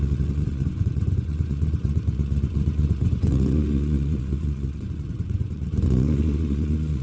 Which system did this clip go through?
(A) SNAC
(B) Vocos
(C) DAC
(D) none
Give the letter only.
B